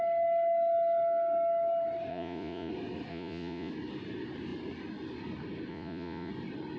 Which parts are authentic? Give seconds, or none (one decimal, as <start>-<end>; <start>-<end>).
0.0-2.1; 2.7-3.1; 3.7-5.7; 6.3-6.8